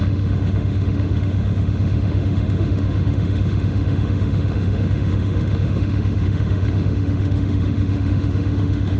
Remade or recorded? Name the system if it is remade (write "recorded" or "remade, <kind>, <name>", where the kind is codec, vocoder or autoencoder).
remade, autoencoder, DAC-VAE